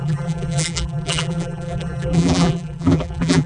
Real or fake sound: fake